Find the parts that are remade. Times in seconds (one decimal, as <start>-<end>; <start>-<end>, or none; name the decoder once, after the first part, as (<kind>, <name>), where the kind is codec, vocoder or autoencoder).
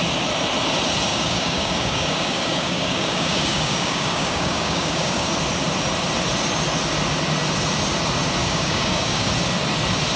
1.1-5.3 (codec, DAC); 8.4-9.3